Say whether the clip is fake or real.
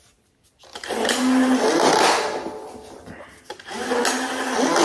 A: real